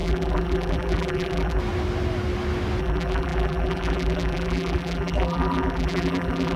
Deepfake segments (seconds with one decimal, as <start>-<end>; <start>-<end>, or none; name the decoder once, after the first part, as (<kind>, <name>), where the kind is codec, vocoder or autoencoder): 0.0-1.6 (vocoder, BigVGAN v2); 2.8-6.6